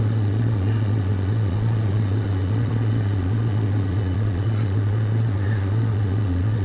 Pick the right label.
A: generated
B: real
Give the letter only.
A